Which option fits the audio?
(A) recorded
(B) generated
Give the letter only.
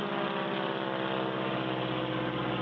A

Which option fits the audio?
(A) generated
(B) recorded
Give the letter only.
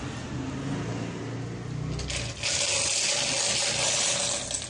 B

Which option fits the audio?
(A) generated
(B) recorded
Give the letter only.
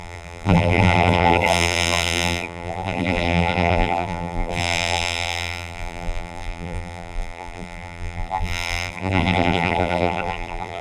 A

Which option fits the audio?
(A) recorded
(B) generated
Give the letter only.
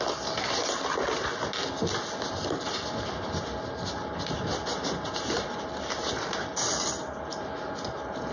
A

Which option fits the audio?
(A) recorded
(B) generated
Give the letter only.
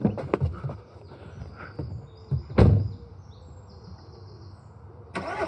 A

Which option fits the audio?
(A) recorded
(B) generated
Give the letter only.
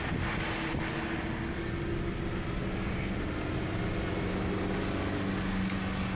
A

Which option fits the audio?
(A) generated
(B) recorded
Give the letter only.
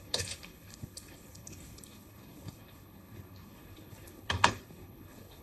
A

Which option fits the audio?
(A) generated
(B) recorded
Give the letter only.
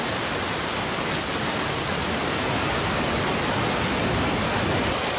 B